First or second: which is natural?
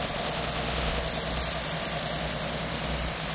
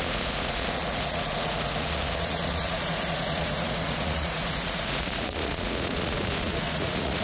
first